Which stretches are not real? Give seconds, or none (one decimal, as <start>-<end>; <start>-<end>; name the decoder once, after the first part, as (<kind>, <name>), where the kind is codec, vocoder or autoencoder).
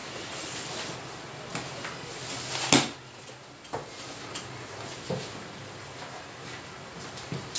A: none